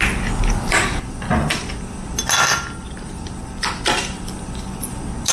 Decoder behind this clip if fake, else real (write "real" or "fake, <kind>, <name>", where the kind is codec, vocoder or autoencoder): real